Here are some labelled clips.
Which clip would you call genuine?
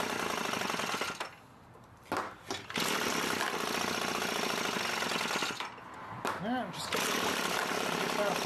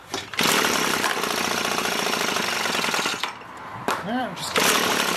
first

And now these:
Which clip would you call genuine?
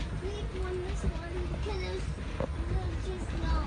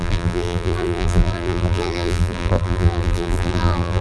first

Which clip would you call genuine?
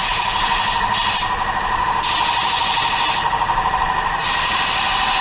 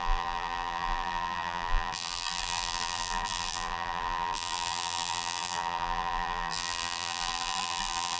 first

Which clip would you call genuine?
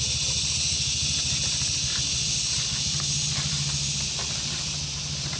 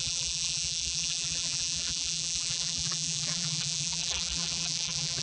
first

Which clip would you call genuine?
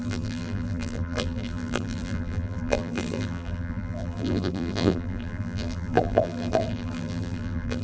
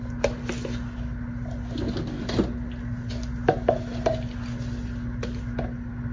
second